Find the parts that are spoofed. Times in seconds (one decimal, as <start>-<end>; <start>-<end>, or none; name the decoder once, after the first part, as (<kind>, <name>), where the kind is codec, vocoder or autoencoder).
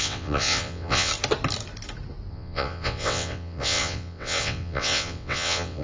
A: 0.0-1.1 (vocoder, WaveNeXt); 2.3-5.8